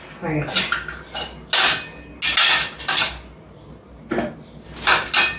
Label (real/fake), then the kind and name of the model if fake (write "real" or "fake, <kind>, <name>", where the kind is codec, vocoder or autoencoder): real